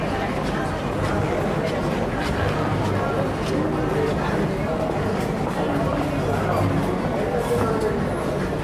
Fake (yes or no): no